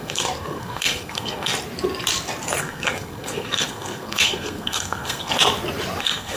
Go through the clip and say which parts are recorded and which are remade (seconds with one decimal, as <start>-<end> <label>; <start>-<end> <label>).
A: 0.0-1.5 remade; 1.5-2.6 recorded; 2.6-5.3 remade; 5.3-6.0 recorded; 6.0-6.4 remade